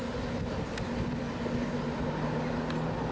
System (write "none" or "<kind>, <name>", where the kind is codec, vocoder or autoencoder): none